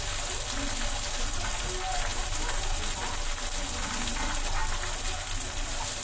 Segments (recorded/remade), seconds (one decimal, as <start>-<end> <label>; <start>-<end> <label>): 0.0-6.0 recorded